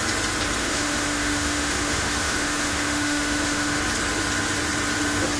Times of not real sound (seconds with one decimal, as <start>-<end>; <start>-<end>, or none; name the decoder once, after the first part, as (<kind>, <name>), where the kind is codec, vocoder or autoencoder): 0.6-3.8 (autoencoder, DAC-VAE)